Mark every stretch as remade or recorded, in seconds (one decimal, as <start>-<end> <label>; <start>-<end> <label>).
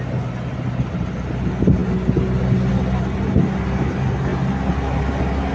0.0-5.5 recorded